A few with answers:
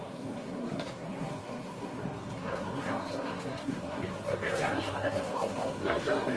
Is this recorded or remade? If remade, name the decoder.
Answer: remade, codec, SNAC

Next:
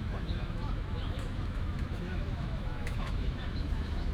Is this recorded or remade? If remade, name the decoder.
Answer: remade, autoencoder, DAC-VAE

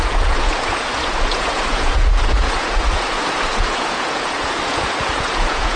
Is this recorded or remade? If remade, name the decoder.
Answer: remade, vocoder, Vocos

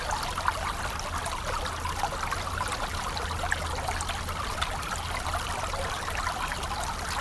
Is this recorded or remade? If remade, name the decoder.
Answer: recorded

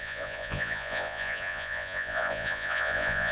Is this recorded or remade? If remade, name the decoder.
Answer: remade, vocoder, Vocos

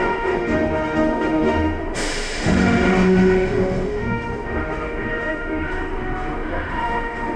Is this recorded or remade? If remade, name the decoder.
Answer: remade, autoencoder, DAC-VAE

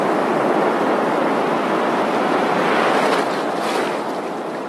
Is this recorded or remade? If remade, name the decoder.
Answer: recorded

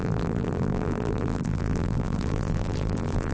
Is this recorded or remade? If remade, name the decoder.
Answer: remade, vocoder, BigVGAN v2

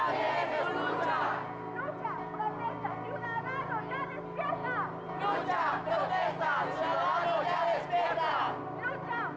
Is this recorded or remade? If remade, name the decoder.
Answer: recorded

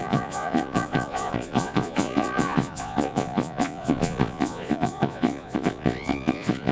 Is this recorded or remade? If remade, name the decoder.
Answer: remade, vocoder, Vocos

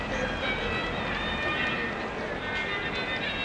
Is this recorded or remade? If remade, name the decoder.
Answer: recorded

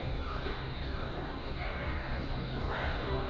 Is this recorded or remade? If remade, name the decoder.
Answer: remade, codec, DAC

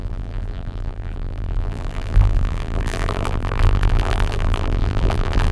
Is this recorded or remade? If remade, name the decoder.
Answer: remade, vocoder, BigVGAN v2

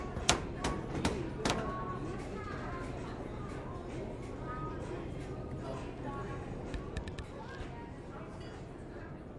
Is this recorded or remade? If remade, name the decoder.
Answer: recorded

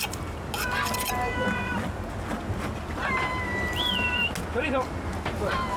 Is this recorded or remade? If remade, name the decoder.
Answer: recorded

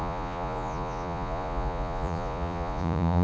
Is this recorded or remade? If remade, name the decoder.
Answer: remade, vocoder, Vocos